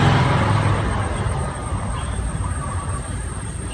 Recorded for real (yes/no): yes